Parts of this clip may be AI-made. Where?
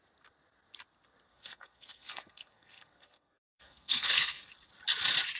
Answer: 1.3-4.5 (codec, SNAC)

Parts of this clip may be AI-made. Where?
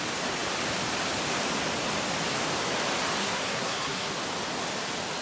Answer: 3.2-4.1 (codec, SNAC)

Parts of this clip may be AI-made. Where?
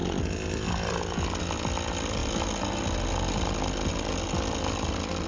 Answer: none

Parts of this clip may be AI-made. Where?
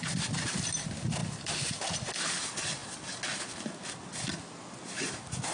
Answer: none